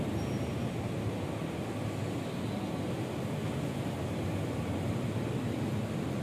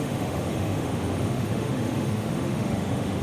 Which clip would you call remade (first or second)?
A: second